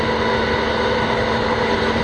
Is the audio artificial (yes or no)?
no